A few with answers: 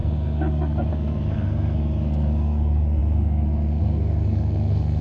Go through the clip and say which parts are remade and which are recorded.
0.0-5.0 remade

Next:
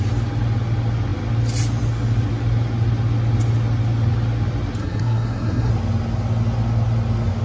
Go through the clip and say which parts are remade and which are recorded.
0.0-4.8 recorded; 4.8-5.7 remade; 5.7-7.4 recorded